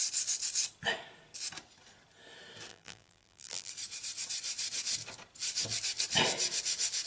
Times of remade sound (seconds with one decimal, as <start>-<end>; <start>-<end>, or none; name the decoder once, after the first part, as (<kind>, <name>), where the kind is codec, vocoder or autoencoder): 2.7-3.7 (vocoder, BigVGAN v2)